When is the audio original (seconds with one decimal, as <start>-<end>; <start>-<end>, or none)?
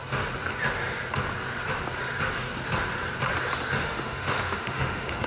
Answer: 0.0-3.8